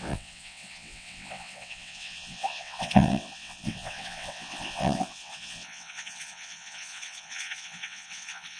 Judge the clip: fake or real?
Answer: fake